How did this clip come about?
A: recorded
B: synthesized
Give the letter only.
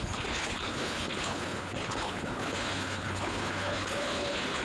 B